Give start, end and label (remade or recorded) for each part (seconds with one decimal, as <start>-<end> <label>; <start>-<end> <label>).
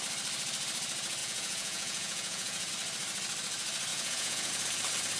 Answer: 0.0-1.2 recorded; 1.2-2.7 remade; 2.7-3.9 recorded; 3.9-4.5 remade; 4.5-5.2 recorded